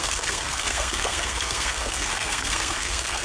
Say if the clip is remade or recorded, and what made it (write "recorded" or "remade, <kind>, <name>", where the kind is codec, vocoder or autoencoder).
remade, codec, SNAC